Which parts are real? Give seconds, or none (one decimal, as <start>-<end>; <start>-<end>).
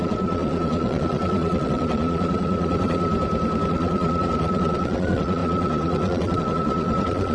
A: 3.1-3.7